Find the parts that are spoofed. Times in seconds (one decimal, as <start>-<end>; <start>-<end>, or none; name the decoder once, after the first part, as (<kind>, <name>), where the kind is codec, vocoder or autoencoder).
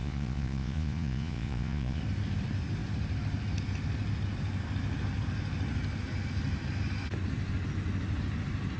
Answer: 0.0-2.0 (vocoder, Vocos)